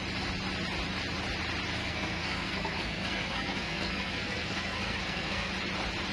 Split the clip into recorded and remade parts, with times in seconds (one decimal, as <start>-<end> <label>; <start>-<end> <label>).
0.0-1.8 recorded; 1.8-5.5 remade; 5.5-6.1 recorded